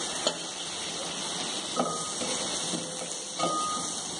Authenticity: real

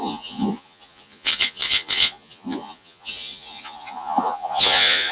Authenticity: fake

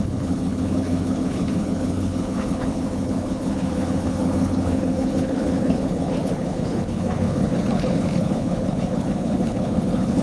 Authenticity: fake